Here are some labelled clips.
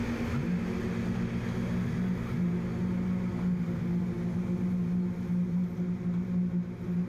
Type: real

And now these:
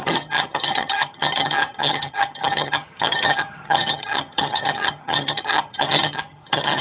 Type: fake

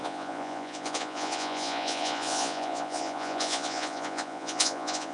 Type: fake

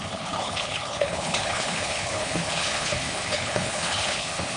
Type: fake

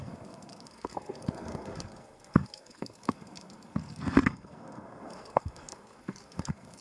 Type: fake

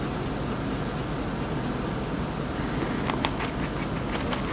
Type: real